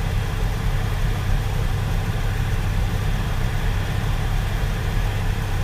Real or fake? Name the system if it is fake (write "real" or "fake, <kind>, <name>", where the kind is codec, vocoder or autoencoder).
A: fake, vocoder, BigVGAN v2